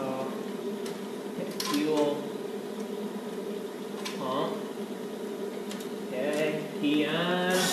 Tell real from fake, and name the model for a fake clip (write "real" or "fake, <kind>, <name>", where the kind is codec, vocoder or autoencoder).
real